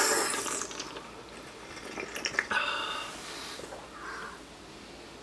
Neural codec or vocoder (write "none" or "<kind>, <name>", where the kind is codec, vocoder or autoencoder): none